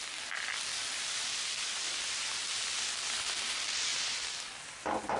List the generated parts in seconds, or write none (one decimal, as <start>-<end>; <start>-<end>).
0.0-3.9; 4.6-5.2